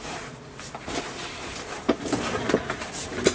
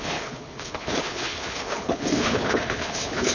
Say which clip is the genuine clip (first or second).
first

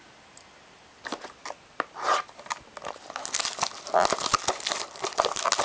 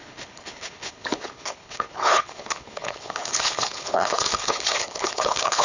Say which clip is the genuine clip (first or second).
first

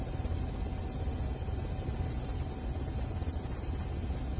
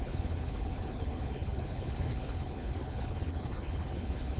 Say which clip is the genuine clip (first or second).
first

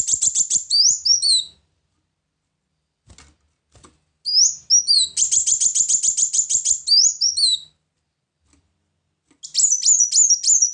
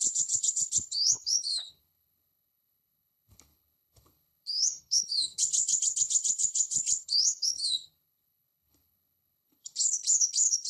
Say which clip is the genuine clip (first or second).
first